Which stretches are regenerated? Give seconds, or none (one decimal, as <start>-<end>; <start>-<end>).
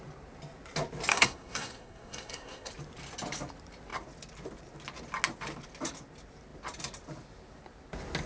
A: 1.1-2.7